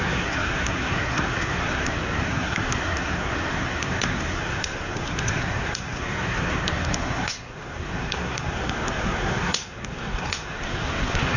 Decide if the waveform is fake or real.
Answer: fake